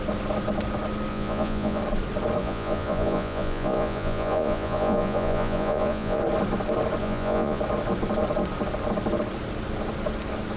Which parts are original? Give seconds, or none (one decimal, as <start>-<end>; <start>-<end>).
0.0-1.1; 1.8-2.4; 6.2-7.0; 7.6-10.6